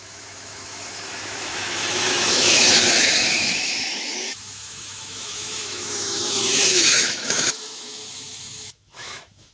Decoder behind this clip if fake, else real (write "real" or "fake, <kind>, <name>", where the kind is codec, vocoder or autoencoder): fake, autoencoder, DAC-VAE